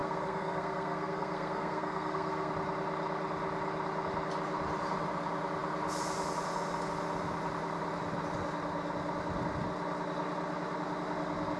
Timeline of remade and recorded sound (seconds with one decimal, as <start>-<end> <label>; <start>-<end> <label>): 0.0-2.5 remade; 2.5-11.6 recorded